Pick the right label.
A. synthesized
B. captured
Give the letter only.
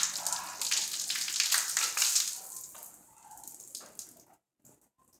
B